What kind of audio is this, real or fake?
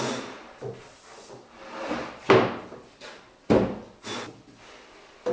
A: real